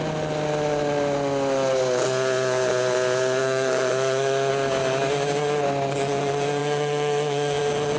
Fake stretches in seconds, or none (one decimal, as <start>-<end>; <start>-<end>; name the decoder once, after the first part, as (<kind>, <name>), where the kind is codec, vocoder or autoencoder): 3.4-4.5 (autoencoder, DAC-VAE); 6.6-7.6